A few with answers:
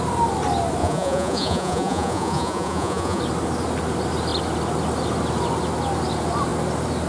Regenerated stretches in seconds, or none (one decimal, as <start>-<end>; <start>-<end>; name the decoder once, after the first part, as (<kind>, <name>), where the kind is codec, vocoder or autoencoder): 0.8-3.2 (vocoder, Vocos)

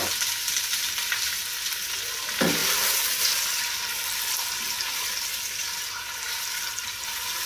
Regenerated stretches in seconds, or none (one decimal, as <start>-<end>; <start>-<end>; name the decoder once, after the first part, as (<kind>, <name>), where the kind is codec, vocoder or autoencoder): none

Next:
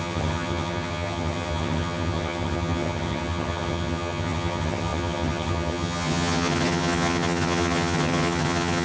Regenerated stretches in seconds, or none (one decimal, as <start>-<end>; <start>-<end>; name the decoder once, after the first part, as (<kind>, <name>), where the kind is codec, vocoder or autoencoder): 0.0-8.8 (vocoder, HiFi-GAN)

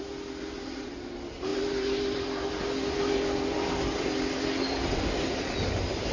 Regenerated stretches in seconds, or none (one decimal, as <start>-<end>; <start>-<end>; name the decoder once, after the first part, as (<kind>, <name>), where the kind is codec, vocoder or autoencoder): none

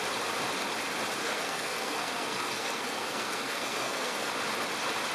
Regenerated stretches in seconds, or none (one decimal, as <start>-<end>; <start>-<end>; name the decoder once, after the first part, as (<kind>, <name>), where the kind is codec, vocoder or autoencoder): 1.2-4.3 (codec, SNAC)